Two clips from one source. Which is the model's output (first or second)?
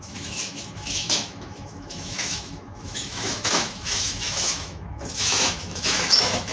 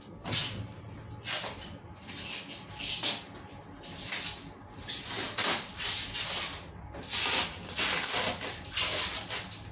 first